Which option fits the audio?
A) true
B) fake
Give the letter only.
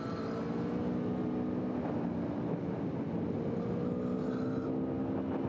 A